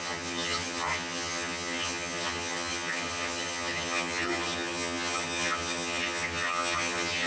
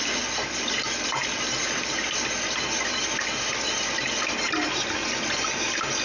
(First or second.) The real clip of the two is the second